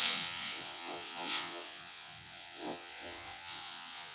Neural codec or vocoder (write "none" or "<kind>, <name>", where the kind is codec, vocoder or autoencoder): vocoder, WaveNeXt